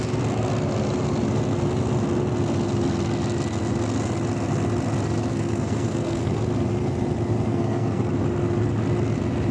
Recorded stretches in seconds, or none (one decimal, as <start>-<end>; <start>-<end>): 0.0-5.3; 6.4-7.5; 8.1-9.5